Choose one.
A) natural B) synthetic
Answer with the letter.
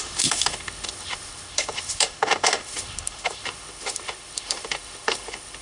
B